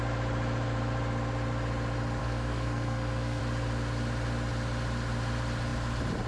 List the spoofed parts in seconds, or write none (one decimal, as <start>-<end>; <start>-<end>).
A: 2.2-3.4